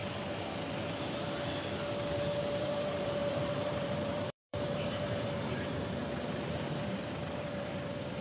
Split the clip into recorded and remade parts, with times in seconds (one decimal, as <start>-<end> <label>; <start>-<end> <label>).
0.0-2.6 recorded; 2.6-8.2 remade

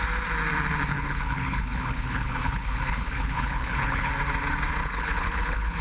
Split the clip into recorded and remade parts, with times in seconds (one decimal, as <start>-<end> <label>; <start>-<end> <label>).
0.0-0.9 recorded; 0.9-4.1 remade; 4.1-4.8 recorded; 4.8-5.8 remade

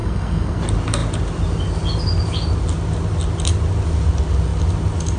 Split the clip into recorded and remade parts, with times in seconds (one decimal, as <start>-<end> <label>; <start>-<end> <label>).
0.0-0.6 remade; 0.6-5.2 recorded

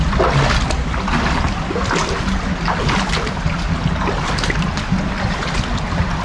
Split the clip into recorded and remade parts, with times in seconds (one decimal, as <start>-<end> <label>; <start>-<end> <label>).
0.0-6.2 recorded